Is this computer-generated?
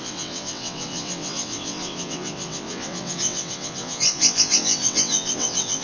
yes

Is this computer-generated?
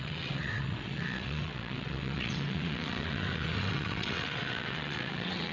yes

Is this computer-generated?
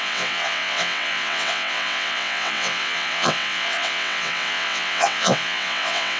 yes